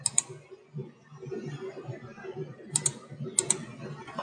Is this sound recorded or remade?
recorded